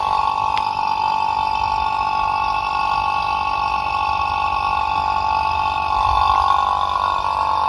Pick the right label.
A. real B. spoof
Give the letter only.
A